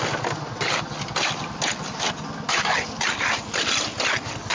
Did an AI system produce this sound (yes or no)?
no